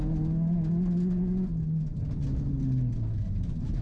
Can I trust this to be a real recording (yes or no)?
yes